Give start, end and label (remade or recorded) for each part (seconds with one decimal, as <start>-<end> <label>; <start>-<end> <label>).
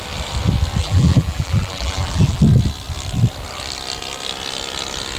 0.0-0.8 recorded; 0.8-2.4 remade; 2.4-5.2 recorded